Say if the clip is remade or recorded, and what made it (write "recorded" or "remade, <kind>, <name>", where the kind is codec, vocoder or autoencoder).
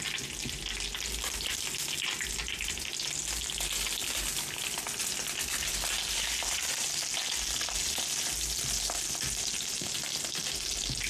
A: recorded